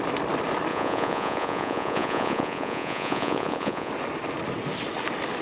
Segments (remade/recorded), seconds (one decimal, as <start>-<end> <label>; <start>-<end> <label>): 0.0-0.7 recorded; 0.7-3.9 remade; 3.9-5.4 recorded